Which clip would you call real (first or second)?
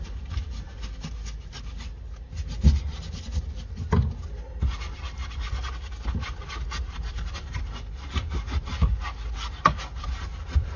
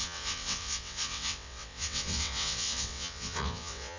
first